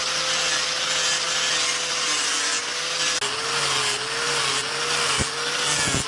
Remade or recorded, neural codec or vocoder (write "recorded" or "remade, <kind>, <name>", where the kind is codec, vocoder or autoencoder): recorded